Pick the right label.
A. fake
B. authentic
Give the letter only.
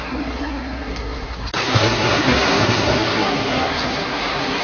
A